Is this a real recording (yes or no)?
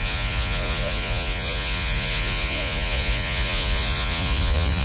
no